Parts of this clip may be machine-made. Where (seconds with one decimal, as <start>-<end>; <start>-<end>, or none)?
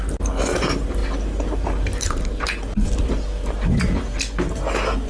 none